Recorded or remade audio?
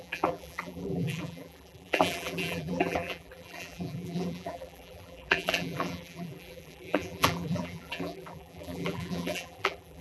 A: remade